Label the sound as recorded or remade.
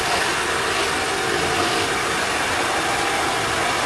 recorded